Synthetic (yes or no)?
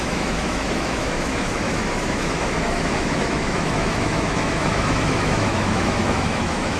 yes